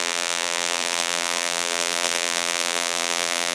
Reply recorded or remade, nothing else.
remade